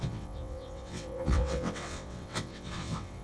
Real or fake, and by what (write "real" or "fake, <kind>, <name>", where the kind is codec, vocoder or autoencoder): fake, vocoder, WaveNeXt